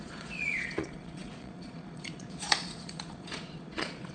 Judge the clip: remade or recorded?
remade